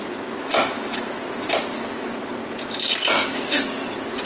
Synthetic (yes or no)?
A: no